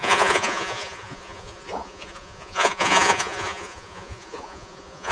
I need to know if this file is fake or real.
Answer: fake